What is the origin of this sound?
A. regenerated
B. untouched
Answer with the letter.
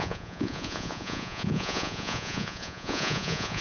A